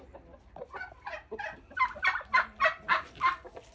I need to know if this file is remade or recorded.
recorded